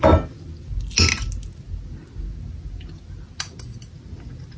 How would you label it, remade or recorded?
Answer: recorded